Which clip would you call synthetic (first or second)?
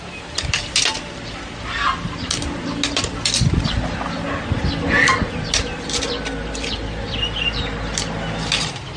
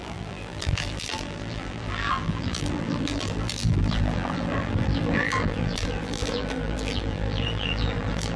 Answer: second